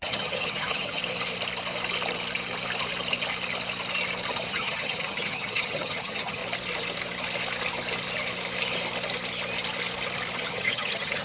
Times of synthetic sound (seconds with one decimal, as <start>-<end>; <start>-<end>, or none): 0.0-1.0; 4.5-6.4; 10.4-11.2